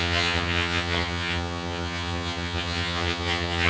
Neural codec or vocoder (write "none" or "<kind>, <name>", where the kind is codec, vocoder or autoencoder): vocoder, HiFi-GAN